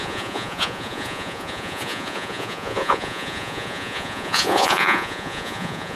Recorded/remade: remade